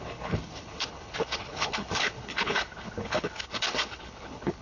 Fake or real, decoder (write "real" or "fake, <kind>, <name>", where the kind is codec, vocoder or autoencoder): fake, codec, HILCodec